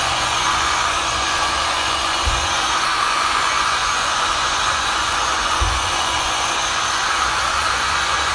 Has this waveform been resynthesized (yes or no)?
yes